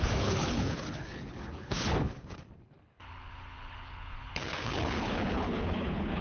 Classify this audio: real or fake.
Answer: fake